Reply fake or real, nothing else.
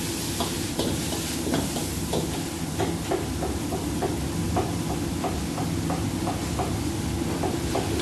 real